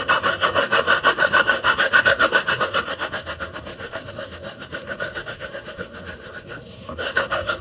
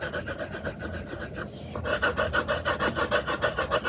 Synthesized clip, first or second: first